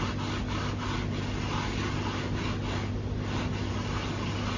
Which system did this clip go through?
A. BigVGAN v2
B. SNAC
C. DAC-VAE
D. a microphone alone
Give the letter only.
D